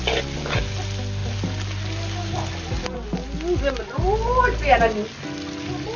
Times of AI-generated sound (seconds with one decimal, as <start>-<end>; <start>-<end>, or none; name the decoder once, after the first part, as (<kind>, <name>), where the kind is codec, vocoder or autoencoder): none